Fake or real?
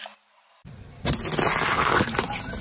real